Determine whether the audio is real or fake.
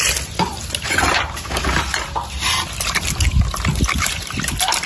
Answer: real